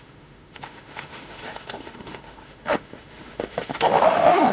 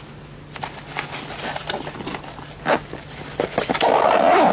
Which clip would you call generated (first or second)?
first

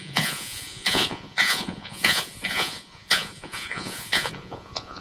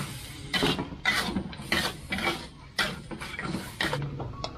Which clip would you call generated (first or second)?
first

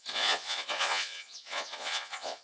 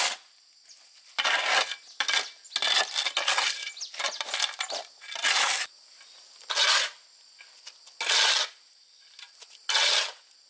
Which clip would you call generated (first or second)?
first